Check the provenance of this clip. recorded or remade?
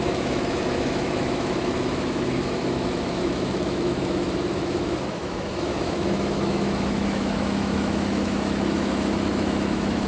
remade